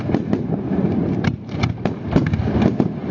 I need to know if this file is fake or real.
real